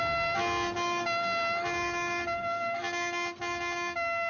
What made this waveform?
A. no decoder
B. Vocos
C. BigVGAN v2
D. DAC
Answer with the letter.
A